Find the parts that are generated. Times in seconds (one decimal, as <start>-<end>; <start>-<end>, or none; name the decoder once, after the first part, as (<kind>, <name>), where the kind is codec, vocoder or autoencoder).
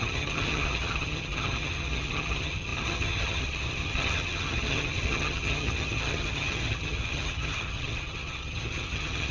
0.0-9.3 (vocoder, HiFi-GAN)